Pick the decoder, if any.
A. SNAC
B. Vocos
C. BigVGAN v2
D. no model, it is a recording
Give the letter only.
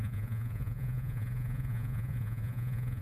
B